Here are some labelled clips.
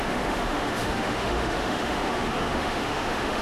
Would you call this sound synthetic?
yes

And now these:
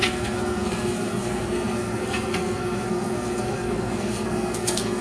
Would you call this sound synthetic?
yes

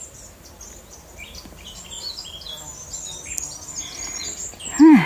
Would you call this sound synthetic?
no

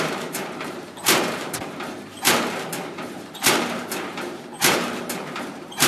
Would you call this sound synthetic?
yes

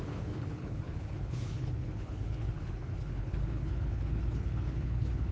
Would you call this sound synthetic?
yes